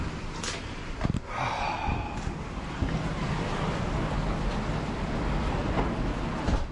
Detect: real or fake real